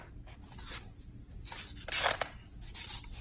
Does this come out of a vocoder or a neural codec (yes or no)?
no